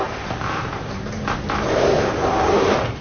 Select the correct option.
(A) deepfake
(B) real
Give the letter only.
A